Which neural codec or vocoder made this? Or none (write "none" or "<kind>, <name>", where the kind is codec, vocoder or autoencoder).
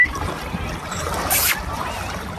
vocoder, BigVGAN v2